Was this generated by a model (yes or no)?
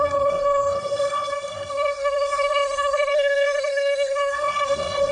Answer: yes